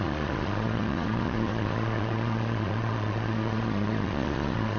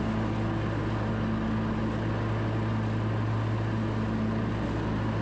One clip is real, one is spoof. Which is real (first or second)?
second